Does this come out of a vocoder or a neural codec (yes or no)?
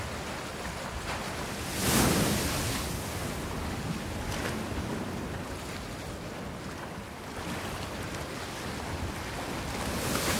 no